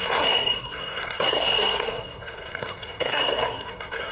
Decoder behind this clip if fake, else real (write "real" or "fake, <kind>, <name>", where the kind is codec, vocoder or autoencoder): fake, codec, SNAC